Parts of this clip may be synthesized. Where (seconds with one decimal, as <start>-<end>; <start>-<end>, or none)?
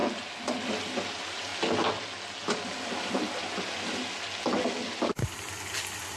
none